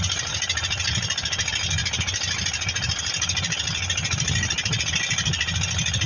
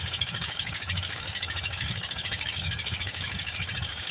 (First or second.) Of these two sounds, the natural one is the first